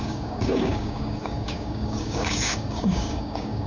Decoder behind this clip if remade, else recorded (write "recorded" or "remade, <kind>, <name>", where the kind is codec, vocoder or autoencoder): remade, codec, DAC